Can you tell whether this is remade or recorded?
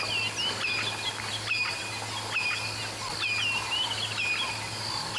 recorded